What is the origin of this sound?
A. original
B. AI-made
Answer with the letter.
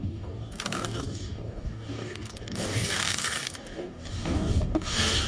B